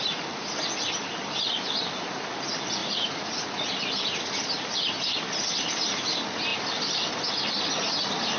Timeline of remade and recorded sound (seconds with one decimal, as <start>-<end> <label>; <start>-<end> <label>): 0.0-2.8 recorded; 2.8-3.7 remade; 3.7-8.4 recorded